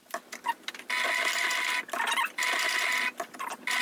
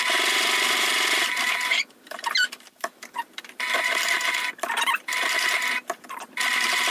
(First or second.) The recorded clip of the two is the first